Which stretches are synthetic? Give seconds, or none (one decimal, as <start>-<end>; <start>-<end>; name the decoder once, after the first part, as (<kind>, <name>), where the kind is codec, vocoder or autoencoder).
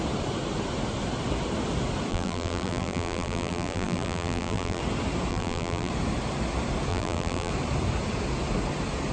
2.1-4.8 (vocoder, BigVGAN v2); 5.3-5.9; 6.9-7.5